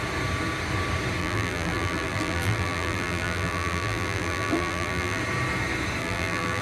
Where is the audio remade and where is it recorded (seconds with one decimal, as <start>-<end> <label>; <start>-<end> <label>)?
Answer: 0.0-1.2 recorded; 1.2-5.2 remade; 5.2-6.0 recorded; 6.0-6.6 remade